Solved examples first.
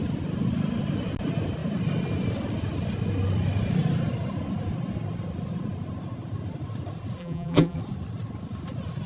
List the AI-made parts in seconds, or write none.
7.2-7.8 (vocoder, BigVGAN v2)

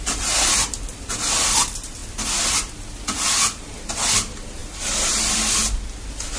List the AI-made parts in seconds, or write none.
none

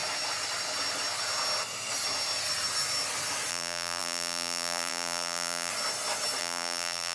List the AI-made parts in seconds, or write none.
3.5-5.7 (vocoder, BigVGAN v2); 6.4-7.1

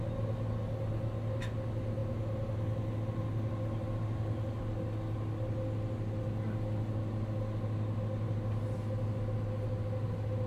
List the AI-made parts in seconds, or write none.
none

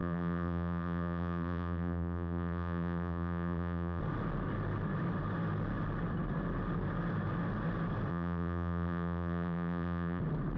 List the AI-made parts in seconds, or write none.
0.0-4.0 (vocoder, BigVGAN v2); 8.1-10.2